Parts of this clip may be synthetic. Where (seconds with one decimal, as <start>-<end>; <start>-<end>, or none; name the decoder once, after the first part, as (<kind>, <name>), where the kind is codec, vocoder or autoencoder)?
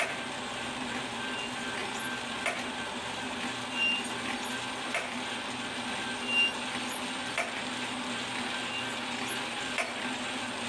none